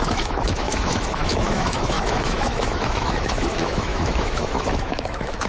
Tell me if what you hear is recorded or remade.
remade